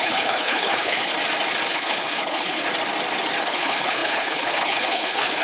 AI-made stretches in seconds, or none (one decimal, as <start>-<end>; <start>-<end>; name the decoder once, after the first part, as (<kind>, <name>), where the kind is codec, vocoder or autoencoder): 0.0-1.1 (codec, HILCodec); 1.7-2.6; 3.4-5.4